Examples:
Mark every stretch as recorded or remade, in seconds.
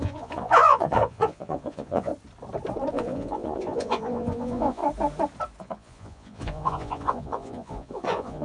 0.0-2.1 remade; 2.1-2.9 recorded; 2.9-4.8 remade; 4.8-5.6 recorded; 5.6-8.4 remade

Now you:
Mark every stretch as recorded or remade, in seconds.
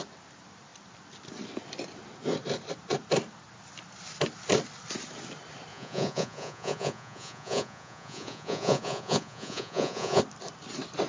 0.0-5.7 recorded; 5.7-10.2 remade; 10.2-11.1 recorded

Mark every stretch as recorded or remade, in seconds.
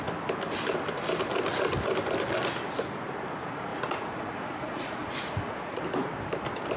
0.0-3.7 recorded; 3.7-5.8 remade; 5.8-6.8 recorded